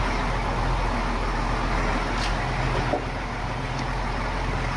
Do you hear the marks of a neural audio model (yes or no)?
no